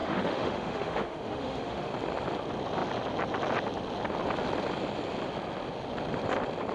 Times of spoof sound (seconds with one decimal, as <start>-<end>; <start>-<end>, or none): 0.0-1.9